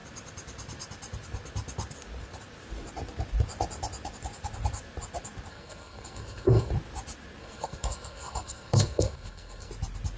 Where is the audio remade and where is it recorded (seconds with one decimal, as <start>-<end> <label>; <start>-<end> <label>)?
0.0-5.5 recorded; 5.5-6.7 remade; 6.7-7.4 recorded; 7.4-9.7 remade; 9.7-10.2 recorded